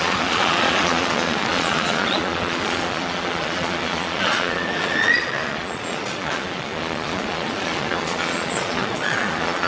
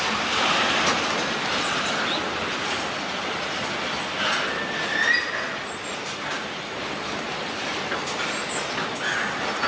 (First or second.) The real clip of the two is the second